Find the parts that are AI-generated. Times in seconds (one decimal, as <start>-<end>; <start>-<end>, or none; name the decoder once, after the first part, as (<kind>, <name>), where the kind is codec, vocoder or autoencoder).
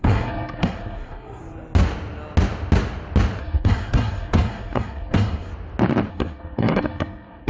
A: 0.0-1.4 (codec, SNAC); 3.4-5.5; 6.1-7.5